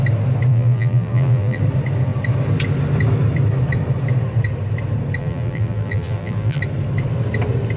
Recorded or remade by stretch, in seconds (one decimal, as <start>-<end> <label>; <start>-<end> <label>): 0.0-0.5 recorded; 0.5-1.6 remade; 1.6-5.2 recorded; 5.2-6.6 remade; 6.6-7.8 recorded